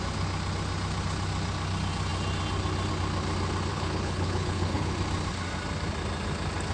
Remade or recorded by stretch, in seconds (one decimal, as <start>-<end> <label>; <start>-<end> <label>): 0.0-3.7 recorded; 3.7-4.9 remade; 4.9-6.7 recorded